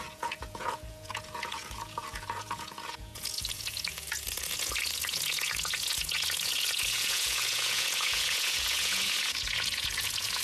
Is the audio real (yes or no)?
no